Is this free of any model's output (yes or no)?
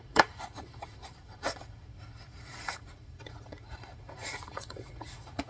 no